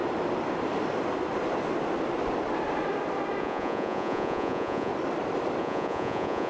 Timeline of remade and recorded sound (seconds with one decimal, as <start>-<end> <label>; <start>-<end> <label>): 0.0-3.4 recorded; 3.4-4.9 remade; 4.9-5.6 recorded; 5.6-6.5 remade

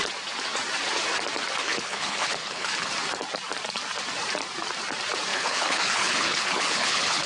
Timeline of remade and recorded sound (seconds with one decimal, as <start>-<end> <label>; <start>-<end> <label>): 0.0-1.6 recorded; 1.6-2.9 remade; 2.9-5.3 recorded; 5.3-7.3 remade

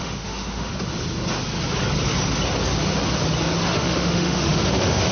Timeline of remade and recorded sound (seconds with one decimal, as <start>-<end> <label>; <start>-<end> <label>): 0.0-0.7 remade; 0.7-3.8 recorded; 3.8-5.1 remade

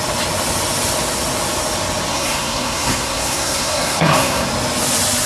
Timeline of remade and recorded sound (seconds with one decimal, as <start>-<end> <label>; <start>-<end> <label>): 0.0-2.1 recorded; 2.1-4.5 remade; 4.5-5.3 recorded

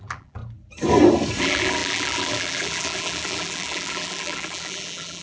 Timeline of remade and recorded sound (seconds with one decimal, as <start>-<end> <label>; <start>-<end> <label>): 0.0-0.4 remade; 0.4-1.4 recorded; 1.4-5.2 remade